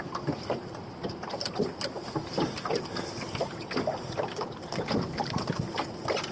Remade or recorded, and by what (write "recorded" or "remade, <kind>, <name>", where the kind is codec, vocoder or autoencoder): recorded